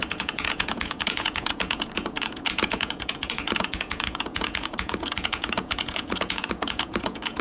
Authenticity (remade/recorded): remade